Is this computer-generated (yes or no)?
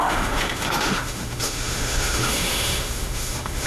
yes